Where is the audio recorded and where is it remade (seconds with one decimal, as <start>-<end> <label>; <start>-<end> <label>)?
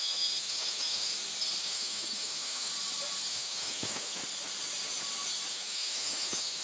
0.0-1.1 remade; 1.1-1.6 recorded; 1.6-2.7 remade; 2.7-3.3 recorded; 3.3-4.2 remade; 4.2-5.5 recorded; 5.5-6.6 remade